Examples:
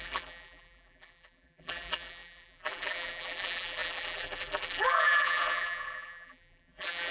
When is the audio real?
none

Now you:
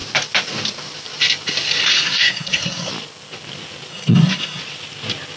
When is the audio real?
0.0-1.8; 2.9-3.9; 4.6-5.4

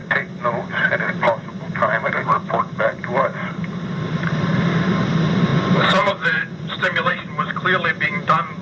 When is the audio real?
0.0-5.5; 7.3-8.6

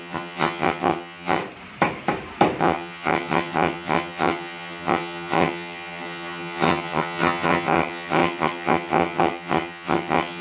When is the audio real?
1.4-2.6

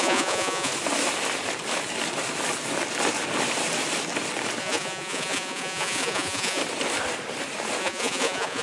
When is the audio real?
0.7-4.6; 6.6-7.8